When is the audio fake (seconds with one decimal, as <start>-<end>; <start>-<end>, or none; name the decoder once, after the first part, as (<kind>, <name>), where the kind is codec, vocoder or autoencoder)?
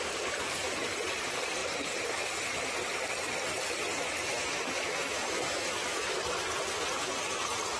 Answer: 4.3-6.2 (autoencoder, DAC-VAE)